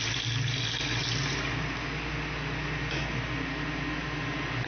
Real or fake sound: real